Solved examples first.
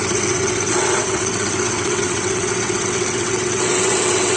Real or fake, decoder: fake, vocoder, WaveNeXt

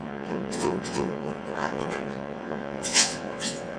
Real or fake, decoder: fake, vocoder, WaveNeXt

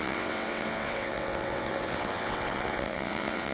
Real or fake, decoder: fake, vocoder, WaveNeXt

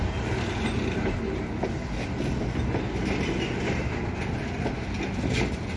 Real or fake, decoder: real